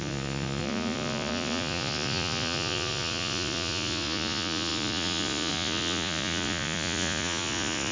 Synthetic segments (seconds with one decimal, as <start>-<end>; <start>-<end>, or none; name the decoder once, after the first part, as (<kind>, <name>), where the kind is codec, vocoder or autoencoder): 0.0-7.9 (vocoder, Vocos)